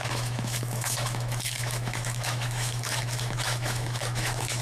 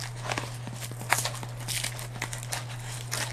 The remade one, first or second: first